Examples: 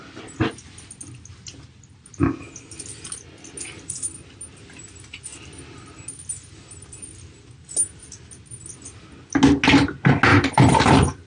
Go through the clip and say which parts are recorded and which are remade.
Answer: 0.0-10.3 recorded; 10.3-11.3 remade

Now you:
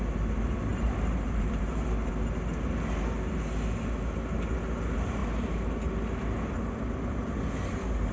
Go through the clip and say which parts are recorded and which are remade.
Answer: 0.0-0.7 recorded; 0.7-2.1 remade; 2.1-8.1 recorded

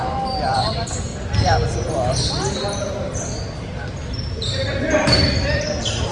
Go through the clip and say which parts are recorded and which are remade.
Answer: 0.0-1.1 remade; 1.1-3.6 recorded; 3.6-6.1 remade

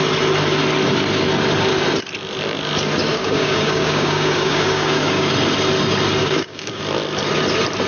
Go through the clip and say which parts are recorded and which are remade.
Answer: 0.0-3.1 recorded; 3.1-5.3 remade; 5.3-6.2 recorded; 6.2-6.8 remade; 6.8-7.9 recorded

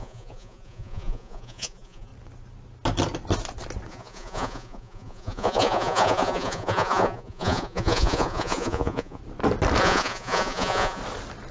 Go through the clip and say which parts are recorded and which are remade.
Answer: 0.0-2.1 remade; 2.1-3.9 recorded; 3.9-9.2 remade; 9.2-9.8 recorded; 9.8-11.0 remade; 11.0-11.5 recorded

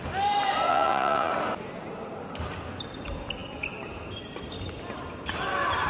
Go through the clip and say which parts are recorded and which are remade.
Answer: 0.0-0.7 recorded; 0.7-1.3 remade; 1.3-5.9 recorded